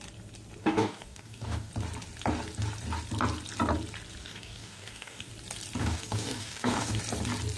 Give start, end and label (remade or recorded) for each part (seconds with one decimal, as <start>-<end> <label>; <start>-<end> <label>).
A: 0.0-0.6 recorded; 0.6-1.7 remade; 1.7-4.2 recorded; 4.2-5.3 remade; 5.3-5.8 recorded; 5.8-7.0 remade; 7.0-7.6 recorded